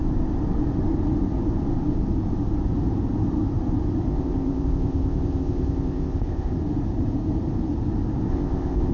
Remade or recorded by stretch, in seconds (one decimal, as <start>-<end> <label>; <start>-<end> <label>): 0.0-4.1 recorded; 4.1-6.5 remade; 6.5-8.3 recorded; 8.3-8.9 remade